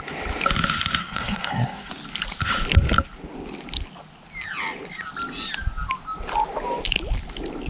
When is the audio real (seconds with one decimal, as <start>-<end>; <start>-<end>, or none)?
0.0-1.0; 1.9-7.7